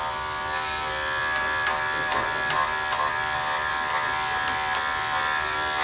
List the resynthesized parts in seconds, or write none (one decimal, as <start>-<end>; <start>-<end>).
none